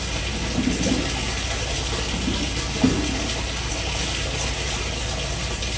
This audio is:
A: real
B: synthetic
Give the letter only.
A